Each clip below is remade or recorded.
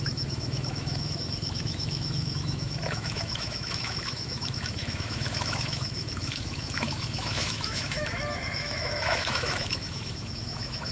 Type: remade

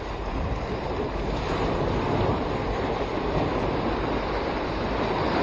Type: recorded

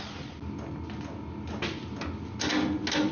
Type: recorded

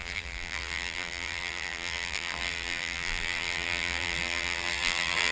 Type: remade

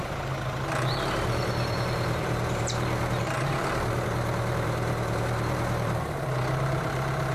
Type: remade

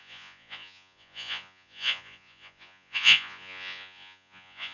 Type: remade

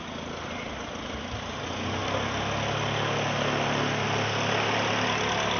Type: recorded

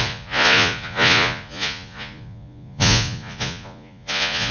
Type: remade